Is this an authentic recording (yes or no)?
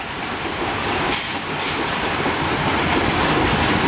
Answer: no